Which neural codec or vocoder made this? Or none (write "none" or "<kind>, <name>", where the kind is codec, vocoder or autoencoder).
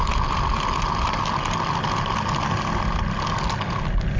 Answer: none